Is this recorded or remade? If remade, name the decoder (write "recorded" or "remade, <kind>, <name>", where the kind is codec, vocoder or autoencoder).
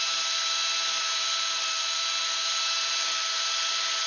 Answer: recorded